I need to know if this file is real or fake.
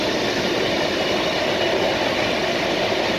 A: real